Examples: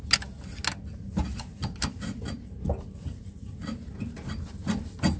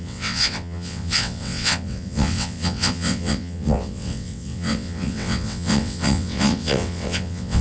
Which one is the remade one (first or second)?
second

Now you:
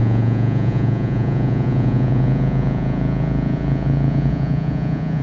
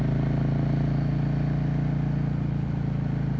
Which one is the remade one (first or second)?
first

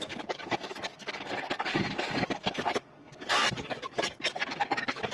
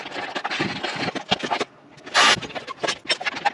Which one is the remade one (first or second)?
first